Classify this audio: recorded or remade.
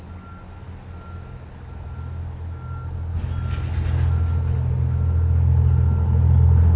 recorded